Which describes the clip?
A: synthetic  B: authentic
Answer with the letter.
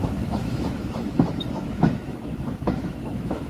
A